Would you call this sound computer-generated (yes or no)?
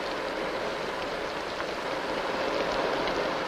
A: no